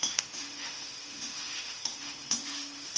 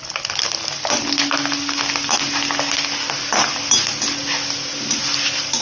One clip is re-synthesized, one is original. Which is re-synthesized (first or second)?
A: first